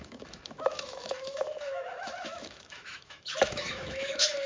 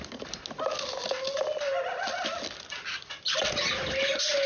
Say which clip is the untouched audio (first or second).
second